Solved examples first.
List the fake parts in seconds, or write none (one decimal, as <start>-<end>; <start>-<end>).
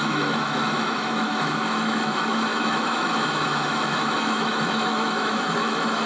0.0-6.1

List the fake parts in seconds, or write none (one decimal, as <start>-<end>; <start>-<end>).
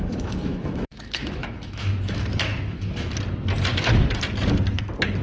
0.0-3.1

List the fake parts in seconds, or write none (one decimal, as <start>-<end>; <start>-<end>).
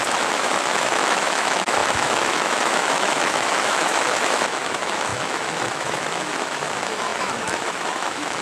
0.0-8.4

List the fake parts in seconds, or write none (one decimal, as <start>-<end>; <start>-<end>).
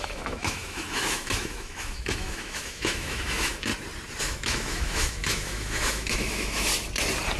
0.0-3.7; 4.2-6.7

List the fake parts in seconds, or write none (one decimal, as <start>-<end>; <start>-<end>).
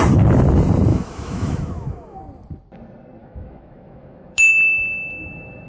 0.9-2.2; 3.2-4.5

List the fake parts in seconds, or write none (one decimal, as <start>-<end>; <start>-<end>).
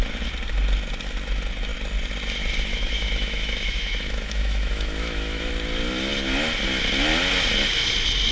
2.7-5.5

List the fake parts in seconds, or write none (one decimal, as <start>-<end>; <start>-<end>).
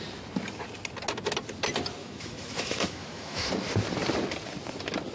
2.0-3.5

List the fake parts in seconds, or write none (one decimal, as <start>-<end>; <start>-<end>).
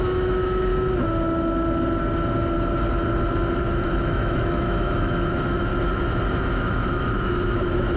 0.0-0.7; 3.6-5.7; 6.4-8.0